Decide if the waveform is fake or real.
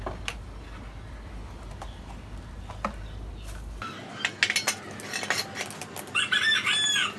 real